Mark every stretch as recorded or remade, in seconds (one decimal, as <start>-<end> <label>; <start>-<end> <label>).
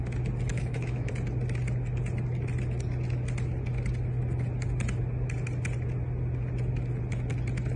0.0-0.5 recorded; 0.5-1.1 remade; 1.1-7.8 recorded